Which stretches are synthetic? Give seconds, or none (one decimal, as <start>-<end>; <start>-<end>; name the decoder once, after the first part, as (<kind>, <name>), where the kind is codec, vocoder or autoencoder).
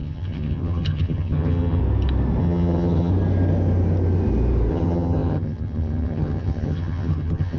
0.0-1.8 (vocoder, HiFi-GAN); 2.4-3.1; 4.7-7.6